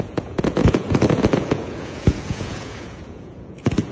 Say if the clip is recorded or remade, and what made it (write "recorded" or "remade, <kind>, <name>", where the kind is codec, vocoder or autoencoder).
remade, vocoder, Vocos